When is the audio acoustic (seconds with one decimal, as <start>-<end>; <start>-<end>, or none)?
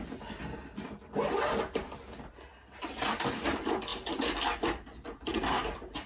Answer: 0.0-1.8; 2.5-6.1